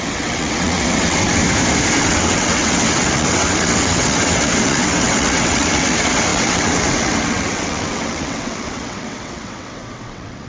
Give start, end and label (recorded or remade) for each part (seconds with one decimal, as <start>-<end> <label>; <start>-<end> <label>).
0.0-1.4 remade; 1.4-2.0 recorded; 2.0-10.5 remade